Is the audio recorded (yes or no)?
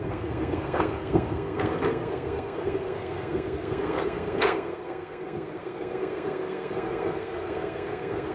no